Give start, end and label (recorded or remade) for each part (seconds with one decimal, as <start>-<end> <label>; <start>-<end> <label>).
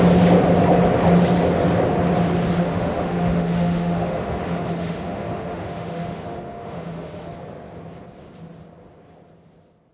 0.0-2.6 recorded; 2.6-7.3 remade; 7.3-9.9 recorded